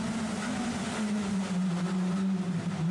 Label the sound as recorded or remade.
recorded